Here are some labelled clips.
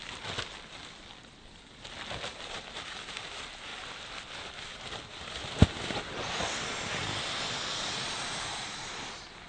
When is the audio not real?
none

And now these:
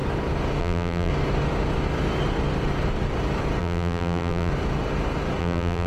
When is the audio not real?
0.6-1.1; 3.6-4.5; 5.4-5.9

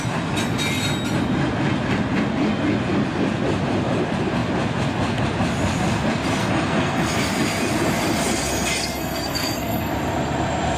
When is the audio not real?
6.4-7.1; 8.8-9.9

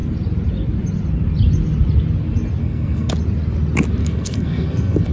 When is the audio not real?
2.6-3.1; 4.0-5.1

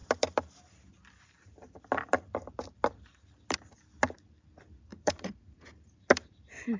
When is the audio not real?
4.9-5.7

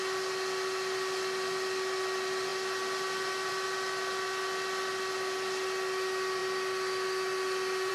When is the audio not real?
none